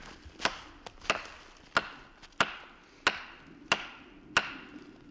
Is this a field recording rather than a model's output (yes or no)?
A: yes